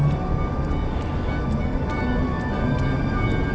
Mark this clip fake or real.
real